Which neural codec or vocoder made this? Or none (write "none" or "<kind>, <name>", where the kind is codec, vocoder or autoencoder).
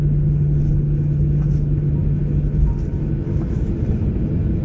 none